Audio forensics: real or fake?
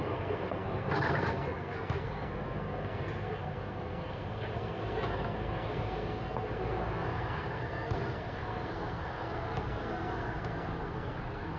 fake